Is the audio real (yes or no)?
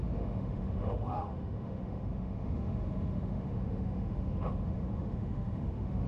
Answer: no